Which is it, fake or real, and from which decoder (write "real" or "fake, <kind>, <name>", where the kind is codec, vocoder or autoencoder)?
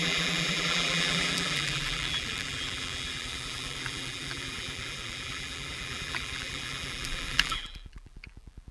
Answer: fake, vocoder, BigVGAN v2